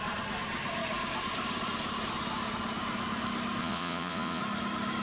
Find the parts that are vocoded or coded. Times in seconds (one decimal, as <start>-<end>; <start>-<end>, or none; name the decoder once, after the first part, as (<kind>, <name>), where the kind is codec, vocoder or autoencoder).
3.6-4.4 (vocoder, Vocos)